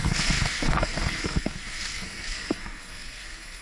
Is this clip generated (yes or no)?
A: yes